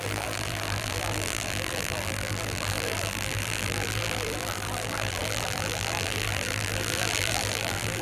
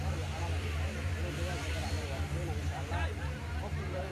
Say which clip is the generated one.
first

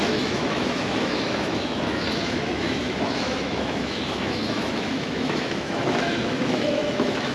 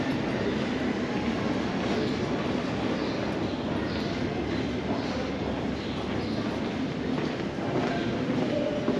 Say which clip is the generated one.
first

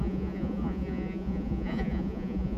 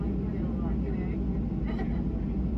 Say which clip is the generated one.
first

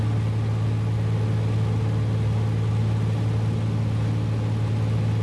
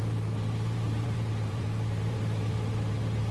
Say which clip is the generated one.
second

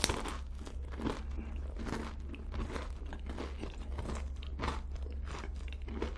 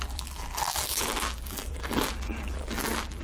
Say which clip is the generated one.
second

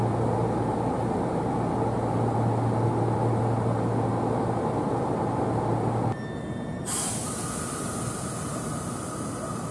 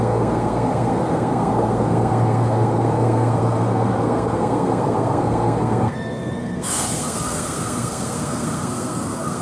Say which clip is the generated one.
second